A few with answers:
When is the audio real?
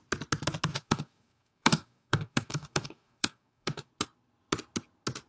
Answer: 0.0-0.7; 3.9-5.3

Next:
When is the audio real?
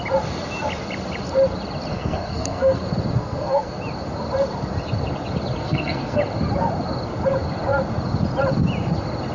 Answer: 0.0-1.9; 2.8-3.2; 3.8-5.6; 6.2-9.3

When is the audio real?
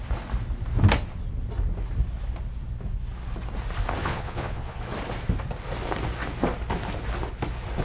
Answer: 0.0-4.0; 4.8-7.8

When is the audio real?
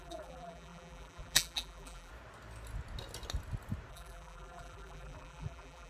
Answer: 2.1-3.9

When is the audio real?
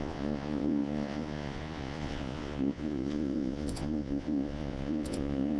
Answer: none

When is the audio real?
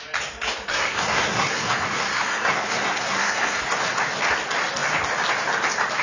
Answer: 0.0-0.7; 3.6-6.0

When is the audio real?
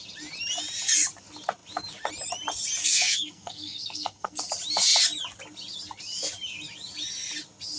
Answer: 0.0-2.8; 4.5-7.8